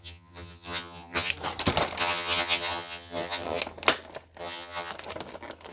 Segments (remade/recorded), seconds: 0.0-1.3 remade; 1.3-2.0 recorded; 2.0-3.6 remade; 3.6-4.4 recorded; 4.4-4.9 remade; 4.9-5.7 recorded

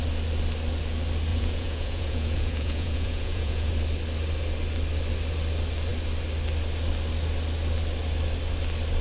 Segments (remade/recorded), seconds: 0.0-1.3 recorded; 1.3-3.7 remade; 3.7-9.0 recorded

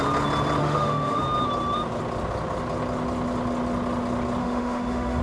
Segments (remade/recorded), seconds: 0.0-0.6 recorded; 0.6-1.2 remade; 1.2-4.4 recorded; 4.4-5.2 remade

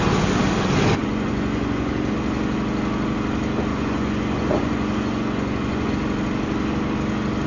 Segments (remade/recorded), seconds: 0.0-1.0 recorded; 1.0-1.9 remade; 1.9-3.7 recorded; 3.7-5.9 remade; 5.9-7.5 recorded

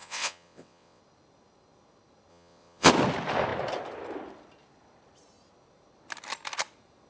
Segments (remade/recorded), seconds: 0.0-1.0 remade; 1.0-2.3 recorded; 2.3-2.9 remade; 2.9-7.1 recorded

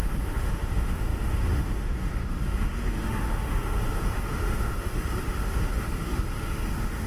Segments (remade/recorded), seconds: 0.0-7.1 remade